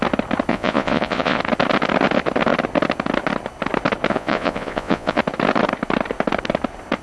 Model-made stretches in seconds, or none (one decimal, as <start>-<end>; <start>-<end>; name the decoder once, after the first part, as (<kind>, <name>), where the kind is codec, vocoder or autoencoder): 0.5-1.4 (vocoder, Vocos); 4.1-5.2